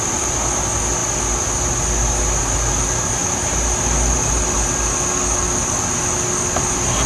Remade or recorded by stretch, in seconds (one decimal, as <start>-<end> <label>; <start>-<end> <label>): 0.0-7.1 recorded